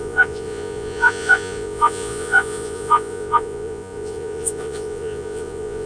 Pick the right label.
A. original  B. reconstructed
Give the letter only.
B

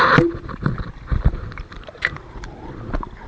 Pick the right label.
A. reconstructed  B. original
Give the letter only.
B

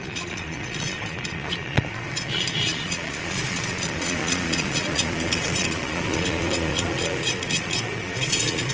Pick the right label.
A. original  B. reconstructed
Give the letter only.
B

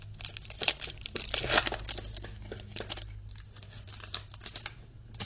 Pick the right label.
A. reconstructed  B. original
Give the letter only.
B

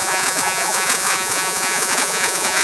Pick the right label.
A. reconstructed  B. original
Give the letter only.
A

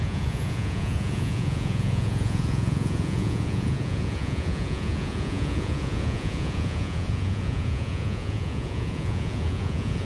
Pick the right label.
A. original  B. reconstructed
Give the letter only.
B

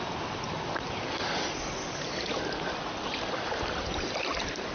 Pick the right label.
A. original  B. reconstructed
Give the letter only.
A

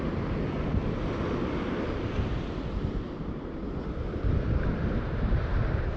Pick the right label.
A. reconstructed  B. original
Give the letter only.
B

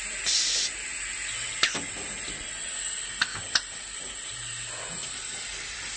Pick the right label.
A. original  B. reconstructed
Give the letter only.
A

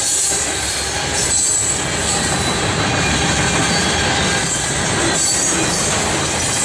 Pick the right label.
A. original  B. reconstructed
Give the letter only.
A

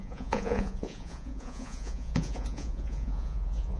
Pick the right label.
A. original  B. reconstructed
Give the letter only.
B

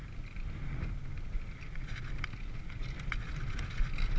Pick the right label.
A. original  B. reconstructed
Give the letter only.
A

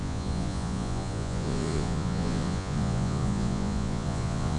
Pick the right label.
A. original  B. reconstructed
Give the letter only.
B